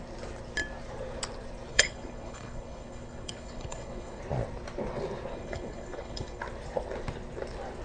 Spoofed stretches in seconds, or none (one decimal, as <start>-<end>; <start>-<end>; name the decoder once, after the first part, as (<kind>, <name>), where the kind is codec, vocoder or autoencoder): 1.7-4.2 (codec, HILCodec); 5.3-6.4